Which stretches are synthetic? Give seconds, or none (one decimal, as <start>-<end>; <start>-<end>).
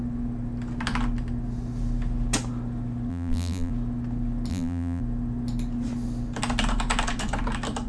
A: 3.1-3.7; 4.5-5.0